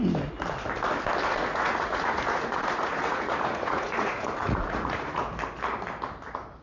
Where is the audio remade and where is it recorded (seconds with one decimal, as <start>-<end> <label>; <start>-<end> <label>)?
0.0-1.3 recorded; 1.3-5.3 remade; 5.3-6.6 recorded